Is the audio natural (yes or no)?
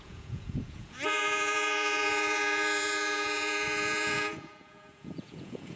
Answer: no